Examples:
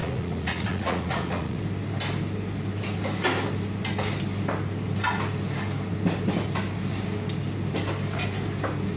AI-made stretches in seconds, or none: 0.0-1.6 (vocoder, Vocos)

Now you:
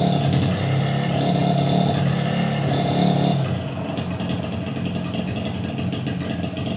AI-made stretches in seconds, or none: none

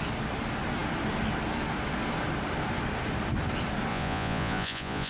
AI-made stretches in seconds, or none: 3.9-5.1 (vocoder, Vocos)

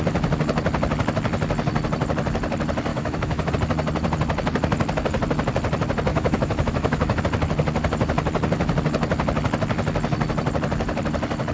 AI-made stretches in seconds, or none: 2.9-3.5 (autoencoder, DAC-VAE); 6.1-7.2

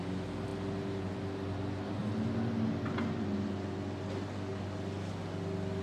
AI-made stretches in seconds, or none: none

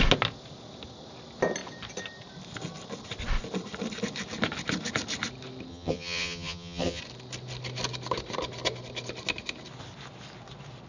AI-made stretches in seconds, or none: 5.7-7.0 (vocoder, HiFi-GAN)

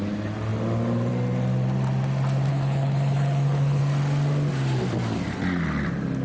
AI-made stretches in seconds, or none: 2.5-3.8 (codec, HILCodec)

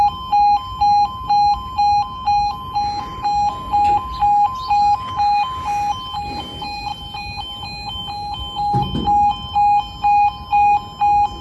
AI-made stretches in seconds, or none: none